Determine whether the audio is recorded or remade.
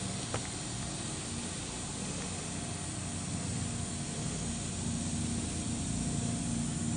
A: recorded